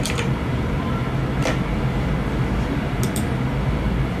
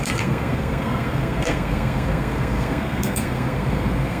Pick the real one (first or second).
first